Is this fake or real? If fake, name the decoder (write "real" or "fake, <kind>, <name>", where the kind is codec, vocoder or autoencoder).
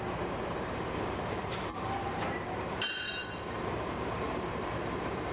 fake, vocoder, BigVGAN v2